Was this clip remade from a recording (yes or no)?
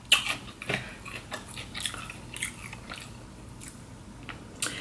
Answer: no